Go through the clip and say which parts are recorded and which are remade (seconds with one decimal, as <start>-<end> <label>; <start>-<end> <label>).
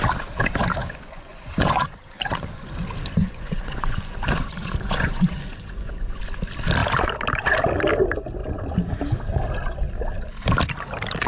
0.0-0.8 recorded; 0.8-2.7 remade; 2.7-3.2 recorded; 3.2-6.2 remade; 6.2-11.3 recorded